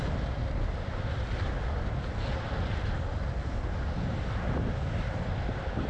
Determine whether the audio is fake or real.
real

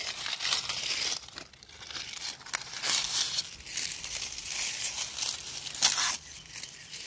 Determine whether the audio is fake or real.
real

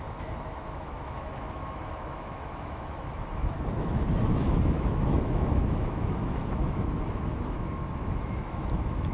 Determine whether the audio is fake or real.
fake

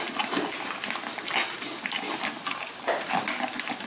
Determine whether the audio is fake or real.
real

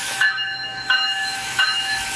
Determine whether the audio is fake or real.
fake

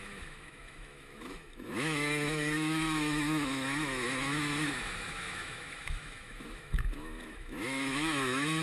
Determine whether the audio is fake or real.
fake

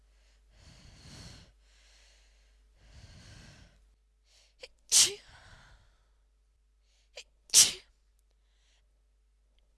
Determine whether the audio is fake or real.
real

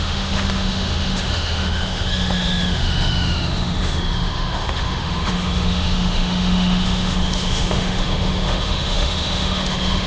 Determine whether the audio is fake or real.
fake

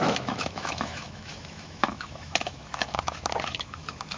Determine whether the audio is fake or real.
fake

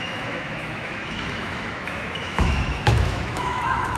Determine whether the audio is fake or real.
fake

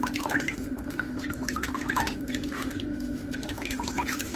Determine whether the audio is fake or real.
fake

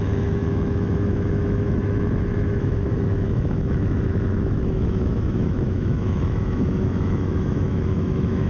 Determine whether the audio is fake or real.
fake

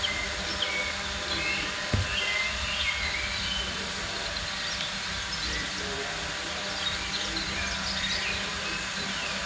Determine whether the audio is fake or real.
real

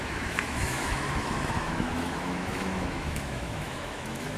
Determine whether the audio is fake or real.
fake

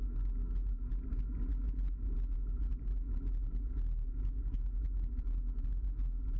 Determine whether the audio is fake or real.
real